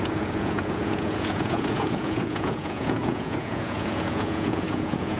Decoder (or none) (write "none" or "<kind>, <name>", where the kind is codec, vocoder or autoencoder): vocoder, Vocos